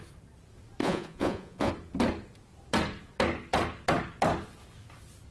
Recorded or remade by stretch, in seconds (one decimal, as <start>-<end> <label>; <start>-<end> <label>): 0.0-0.8 recorded; 0.8-1.7 remade; 1.7-5.3 recorded